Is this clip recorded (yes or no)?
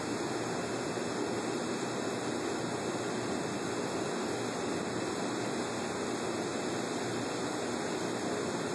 yes